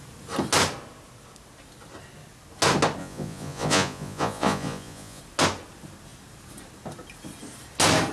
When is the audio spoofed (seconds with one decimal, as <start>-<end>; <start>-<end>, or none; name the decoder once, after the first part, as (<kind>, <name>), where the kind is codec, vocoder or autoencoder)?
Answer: 3.0-5.2 (vocoder, Vocos)